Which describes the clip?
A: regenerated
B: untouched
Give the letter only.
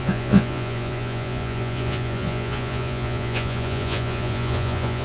A